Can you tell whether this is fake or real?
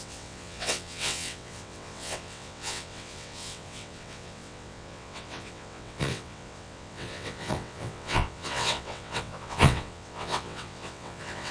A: fake